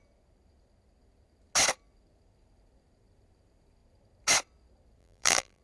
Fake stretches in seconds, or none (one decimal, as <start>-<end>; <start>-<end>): 5.0-5.6